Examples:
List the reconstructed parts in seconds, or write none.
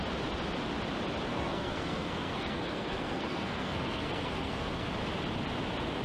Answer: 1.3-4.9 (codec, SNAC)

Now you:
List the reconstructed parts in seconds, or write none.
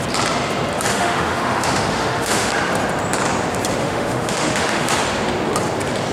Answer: 0.9-2.5 (autoencoder, DAC-VAE); 3.8-4.9